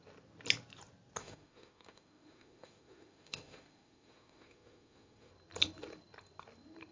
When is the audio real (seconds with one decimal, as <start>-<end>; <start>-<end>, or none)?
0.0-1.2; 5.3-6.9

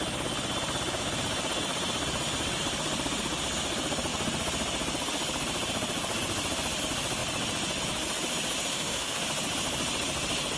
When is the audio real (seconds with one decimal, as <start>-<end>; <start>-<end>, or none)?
0.0-8.7; 9.2-10.6

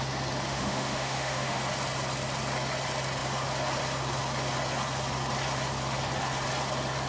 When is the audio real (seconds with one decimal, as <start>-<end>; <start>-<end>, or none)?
0.0-0.5; 1.6-7.1

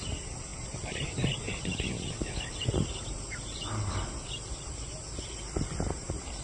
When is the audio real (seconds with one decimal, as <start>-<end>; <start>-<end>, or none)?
0.0-6.4

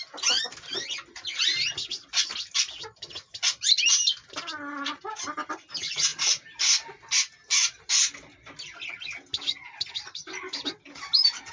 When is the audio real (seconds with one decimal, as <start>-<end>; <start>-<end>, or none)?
0.0-11.5

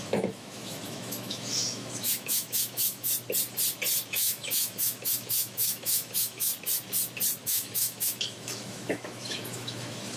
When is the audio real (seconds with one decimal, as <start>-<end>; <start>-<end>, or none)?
3.1-4.1; 6.5-7.4

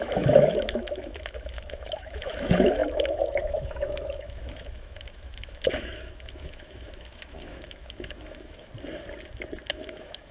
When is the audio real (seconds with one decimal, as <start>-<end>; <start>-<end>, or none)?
8.7-9.7

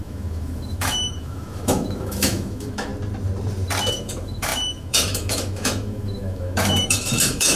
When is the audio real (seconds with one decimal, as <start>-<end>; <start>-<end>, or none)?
2.9-3.9